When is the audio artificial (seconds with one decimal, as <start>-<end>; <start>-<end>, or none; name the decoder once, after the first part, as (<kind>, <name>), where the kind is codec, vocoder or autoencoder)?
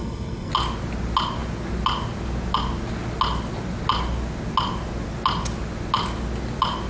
0.0-0.5 (codec, SNAC)